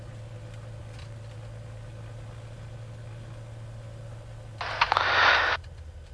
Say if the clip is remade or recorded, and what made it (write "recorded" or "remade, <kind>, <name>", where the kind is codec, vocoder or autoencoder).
recorded